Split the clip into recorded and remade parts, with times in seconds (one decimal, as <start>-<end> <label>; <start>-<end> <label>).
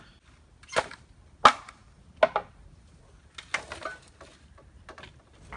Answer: 0.0-5.6 recorded